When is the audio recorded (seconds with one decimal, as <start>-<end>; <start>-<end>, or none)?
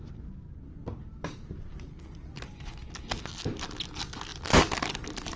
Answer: 0.0-5.4